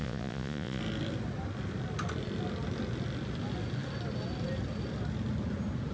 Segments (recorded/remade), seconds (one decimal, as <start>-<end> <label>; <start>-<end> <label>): 0.0-0.8 remade; 0.8-5.9 recorded